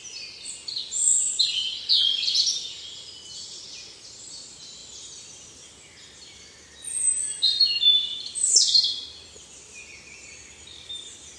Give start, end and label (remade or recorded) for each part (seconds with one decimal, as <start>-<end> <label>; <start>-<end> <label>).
0.0-11.4 recorded